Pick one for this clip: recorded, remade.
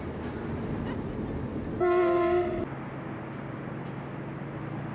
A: recorded